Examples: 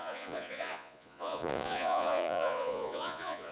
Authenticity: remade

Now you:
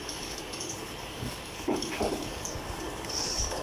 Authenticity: remade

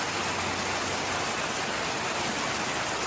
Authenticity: recorded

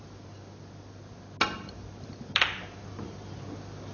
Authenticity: recorded